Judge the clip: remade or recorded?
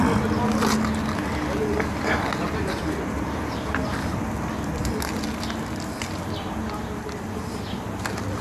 recorded